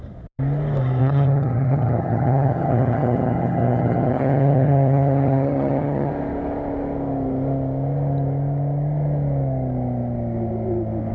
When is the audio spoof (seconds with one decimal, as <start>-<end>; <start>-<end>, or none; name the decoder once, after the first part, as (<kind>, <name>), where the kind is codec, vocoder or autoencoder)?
1.0-6.1 (vocoder, HiFi-GAN)